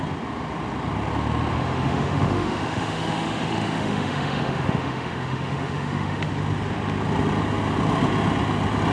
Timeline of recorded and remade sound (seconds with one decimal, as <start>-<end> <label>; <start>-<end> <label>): 0.0-1.5 recorded; 1.5-6.3 remade; 6.3-8.9 recorded